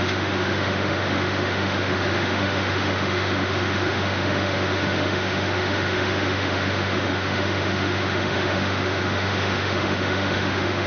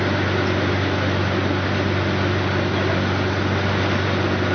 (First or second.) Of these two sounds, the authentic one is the second